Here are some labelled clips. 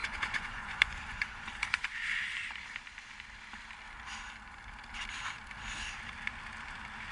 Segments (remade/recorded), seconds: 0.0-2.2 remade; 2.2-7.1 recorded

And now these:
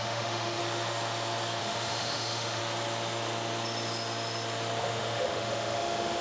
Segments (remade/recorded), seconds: 0.0-0.6 remade; 0.6-1.6 recorded; 1.6-2.6 remade; 2.6-4.8 recorded; 4.8-6.2 remade

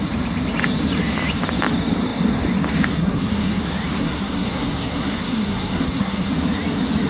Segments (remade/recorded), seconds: 0.0-3.0 recorded; 3.0-3.6 remade; 3.6-4.0 recorded; 4.0-6.3 remade; 6.3-7.1 recorded